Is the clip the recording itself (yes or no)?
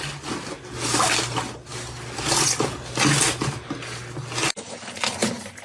yes